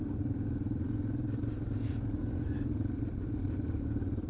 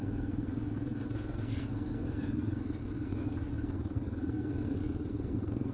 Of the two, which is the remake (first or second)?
second